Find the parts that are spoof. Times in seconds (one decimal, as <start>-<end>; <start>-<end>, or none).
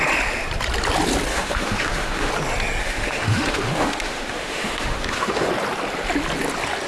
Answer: 1.3-2.3; 2.8-5.5